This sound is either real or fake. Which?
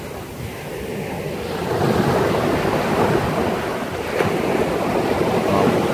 fake